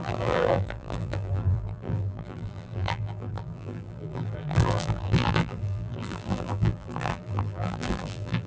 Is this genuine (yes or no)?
no